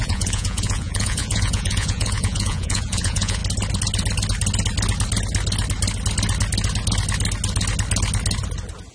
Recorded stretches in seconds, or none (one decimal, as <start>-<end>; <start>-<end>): 3.4-8.9